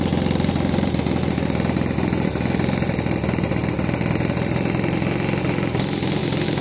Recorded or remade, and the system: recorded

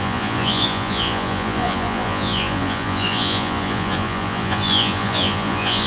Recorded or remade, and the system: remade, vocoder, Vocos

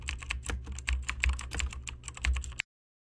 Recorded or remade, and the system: recorded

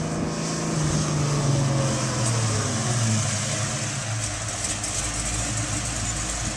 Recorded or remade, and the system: recorded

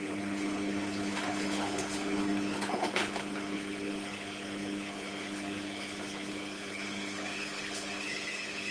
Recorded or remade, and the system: remade, codec, HILCodec